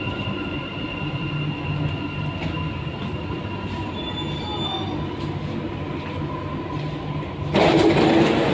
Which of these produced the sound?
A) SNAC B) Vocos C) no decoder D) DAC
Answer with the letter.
C